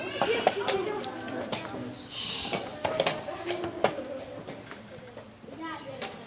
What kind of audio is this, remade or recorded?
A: recorded